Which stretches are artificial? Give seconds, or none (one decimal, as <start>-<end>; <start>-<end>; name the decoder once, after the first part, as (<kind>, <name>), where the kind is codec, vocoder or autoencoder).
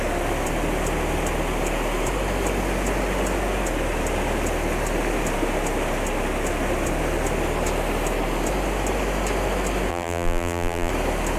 9.9-10.9 (vocoder, BigVGAN v2)